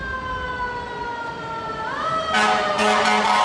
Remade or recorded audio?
recorded